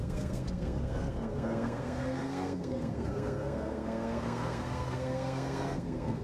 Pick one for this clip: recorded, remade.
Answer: remade